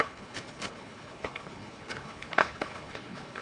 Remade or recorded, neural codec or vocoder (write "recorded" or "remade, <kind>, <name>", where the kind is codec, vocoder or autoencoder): remade, codec, HILCodec